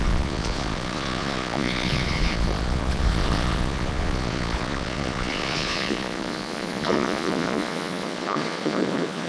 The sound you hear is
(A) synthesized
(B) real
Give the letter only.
A